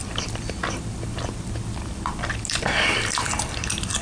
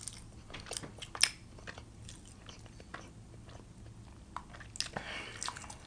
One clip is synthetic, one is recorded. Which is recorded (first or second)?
second